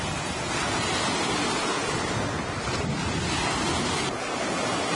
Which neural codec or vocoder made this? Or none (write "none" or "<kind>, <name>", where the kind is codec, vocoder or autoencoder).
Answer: none